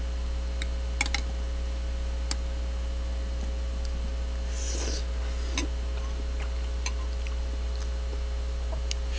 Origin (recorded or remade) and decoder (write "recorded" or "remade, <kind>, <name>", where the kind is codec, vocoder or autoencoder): recorded